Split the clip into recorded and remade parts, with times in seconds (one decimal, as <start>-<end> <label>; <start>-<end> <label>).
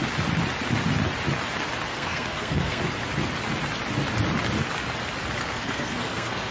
0.0-1.9 recorded; 1.9-2.8 remade; 2.8-5.4 recorded; 5.4-6.5 remade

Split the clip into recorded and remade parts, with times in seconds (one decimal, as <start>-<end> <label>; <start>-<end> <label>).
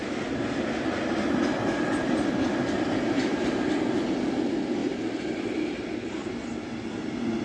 0.0-7.4 recorded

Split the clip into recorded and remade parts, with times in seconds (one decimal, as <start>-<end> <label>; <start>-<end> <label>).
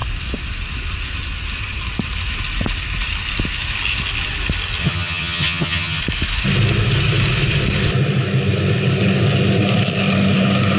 0.0-4.8 recorded; 4.8-6.0 remade; 6.0-10.8 recorded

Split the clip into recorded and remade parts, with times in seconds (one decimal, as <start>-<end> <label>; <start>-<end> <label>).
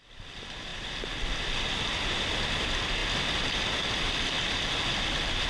0.0-5.5 recorded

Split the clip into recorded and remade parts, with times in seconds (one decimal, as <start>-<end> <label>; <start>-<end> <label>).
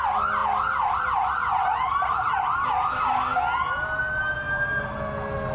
0.0-5.5 recorded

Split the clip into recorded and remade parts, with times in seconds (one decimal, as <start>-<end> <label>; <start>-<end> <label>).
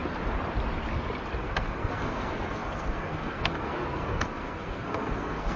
0.0-1.4 recorded; 1.4-5.6 remade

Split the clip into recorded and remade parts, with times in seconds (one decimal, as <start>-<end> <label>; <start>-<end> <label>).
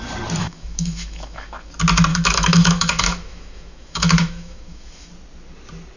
0.0-0.4 recorded; 0.4-1.7 remade; 1.7-2.1 recorded; 2.1-5.1 remade; 5.1-6.0 recorded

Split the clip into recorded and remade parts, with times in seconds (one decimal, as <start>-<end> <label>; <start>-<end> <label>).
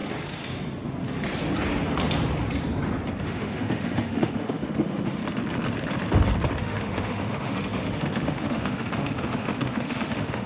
0.0-3.2 recorded; 3.2-5.2 remade; 5.2-6.6 recorded; 6.6-10.5 remade